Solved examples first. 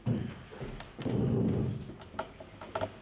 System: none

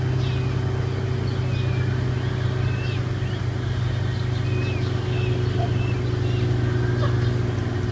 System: none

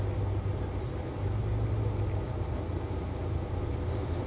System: none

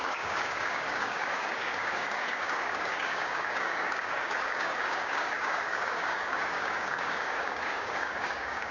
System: codec, DAC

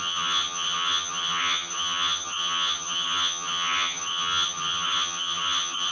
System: vocoder, HiFi-GAN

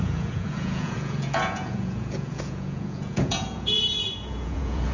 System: vocoder, Vocos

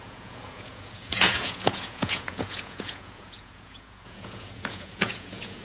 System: vocoder, Vocos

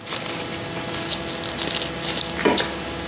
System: none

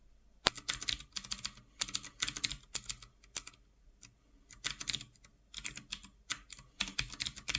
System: none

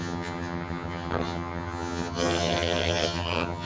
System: vocoder, HiFi-GAN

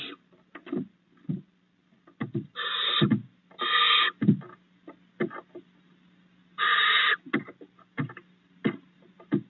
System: none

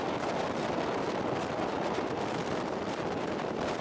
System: none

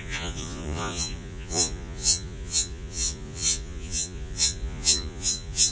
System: vocoder, Vocos